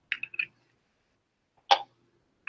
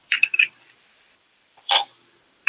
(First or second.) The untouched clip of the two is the first